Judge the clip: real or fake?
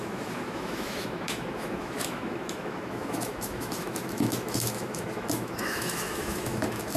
fake